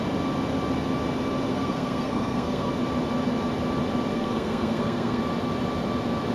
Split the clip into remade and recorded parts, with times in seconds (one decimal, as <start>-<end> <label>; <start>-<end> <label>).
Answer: 0.0-1.5 recorded; 1.5-2.7 remade; 2.7-4.1 recorded; 4.1-5.2 remade; 5.2-6.3 recorded